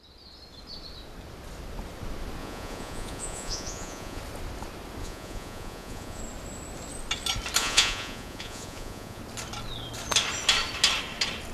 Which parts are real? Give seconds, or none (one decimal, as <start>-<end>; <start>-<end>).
0.0-2.4; 4.2-5.0; 6.2-7.6; 9.2-11.5

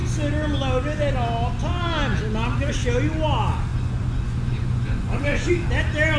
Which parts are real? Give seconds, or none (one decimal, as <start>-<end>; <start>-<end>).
0.0-3.7; 5.5-6.2

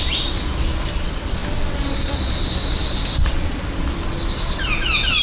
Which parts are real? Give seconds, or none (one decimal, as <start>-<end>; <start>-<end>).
0.0-5.2

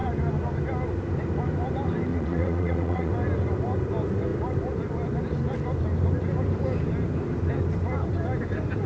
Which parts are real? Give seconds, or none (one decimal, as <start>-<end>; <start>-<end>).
0.0-2.1; 3.1-8.9

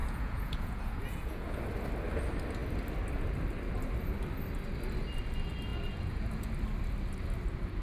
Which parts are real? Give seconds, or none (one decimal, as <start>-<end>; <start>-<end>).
1.6-5.7; 6.5-7.8

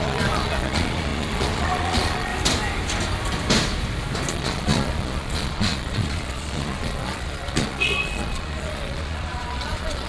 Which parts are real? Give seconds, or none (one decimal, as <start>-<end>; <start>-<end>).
2.3-4.3

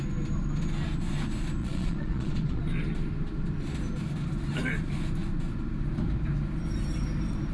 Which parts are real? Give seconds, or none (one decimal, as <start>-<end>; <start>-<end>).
0.0-1.6; 2.6-7.5

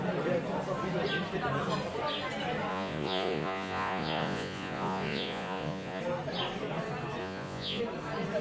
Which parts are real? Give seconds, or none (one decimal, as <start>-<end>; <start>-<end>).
0.0-2.7; 6.0-7.2; 7.8-8.4